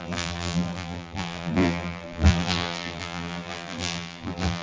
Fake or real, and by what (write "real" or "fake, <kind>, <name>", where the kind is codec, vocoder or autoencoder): fake, vocoder, BigVGAN v2